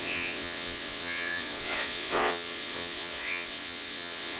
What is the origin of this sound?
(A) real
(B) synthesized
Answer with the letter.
B